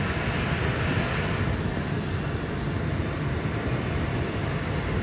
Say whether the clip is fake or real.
real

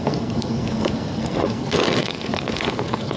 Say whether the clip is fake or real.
fake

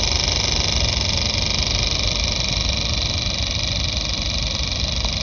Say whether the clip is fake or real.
real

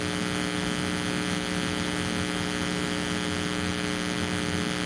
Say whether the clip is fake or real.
real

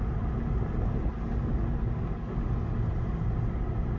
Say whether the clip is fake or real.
real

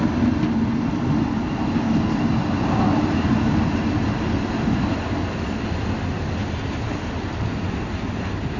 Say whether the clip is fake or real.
real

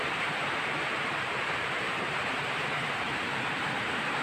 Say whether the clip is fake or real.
fake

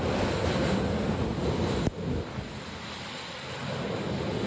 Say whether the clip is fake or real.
real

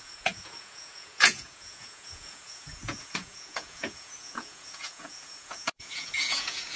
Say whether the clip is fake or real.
fake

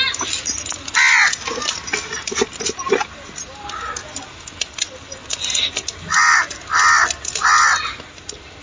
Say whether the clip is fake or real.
real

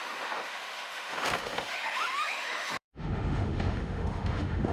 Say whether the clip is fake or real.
fake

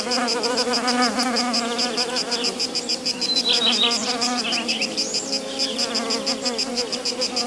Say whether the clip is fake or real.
real